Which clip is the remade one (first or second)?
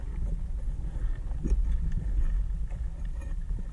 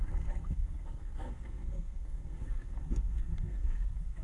second